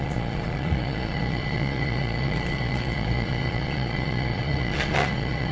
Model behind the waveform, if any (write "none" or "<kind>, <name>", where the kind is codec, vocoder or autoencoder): vocoder, Vocos